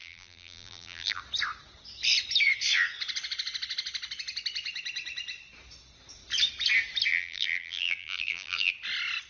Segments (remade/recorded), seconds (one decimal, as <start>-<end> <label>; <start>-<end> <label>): 0.0-1.2 remade; 1.2-7.1 recorded; 7.1-8.7 remade; 8.7-9.3 recorded